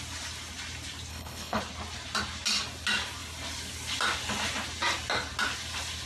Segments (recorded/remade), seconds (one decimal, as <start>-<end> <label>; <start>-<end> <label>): 0.0-1.1 recorded; 1.1-1.6 remade; 1.6-6.1 recorded